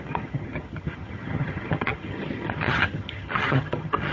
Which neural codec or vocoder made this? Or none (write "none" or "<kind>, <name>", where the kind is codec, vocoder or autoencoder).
vocoder, HiFi-GAN